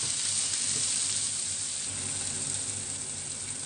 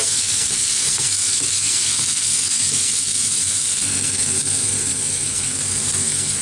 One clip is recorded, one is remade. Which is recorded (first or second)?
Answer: first